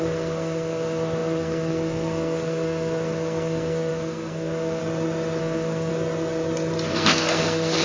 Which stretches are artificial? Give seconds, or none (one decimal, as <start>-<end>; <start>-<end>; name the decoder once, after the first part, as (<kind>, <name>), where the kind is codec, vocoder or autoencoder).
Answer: 0.0-4.8 (codec, SNAC); 5.4-5.9; 6.9-7.8